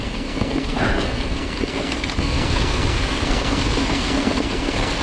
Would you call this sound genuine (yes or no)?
no